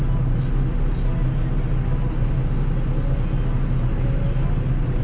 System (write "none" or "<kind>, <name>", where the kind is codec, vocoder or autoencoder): none